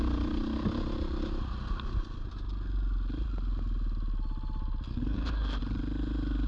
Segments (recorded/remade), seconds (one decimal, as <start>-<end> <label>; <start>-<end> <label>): 0.0-4.9 recorded; 4.9-5.6 remade; 5.6-6.5 recorded